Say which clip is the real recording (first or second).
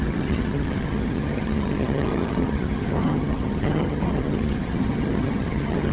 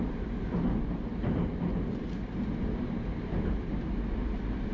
second